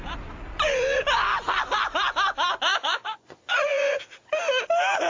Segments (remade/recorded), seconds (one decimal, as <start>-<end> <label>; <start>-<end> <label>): 0.0-2.7 recorded; 2.7-4.0 remade; 4.0-5.1 recorded